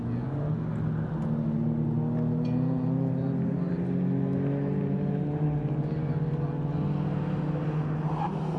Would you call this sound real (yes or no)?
yes